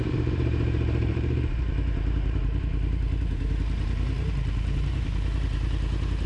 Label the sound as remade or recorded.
remade